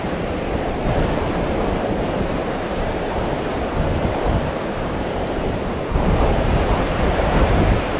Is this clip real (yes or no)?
no